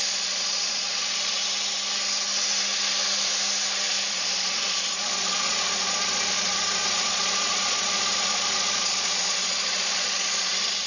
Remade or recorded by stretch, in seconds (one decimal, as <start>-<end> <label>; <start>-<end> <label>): 0.0-1.4 remade; 1.4-4.1 recorded; 4.1-10.9 remade